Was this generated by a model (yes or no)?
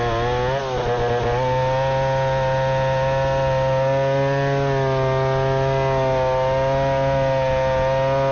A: no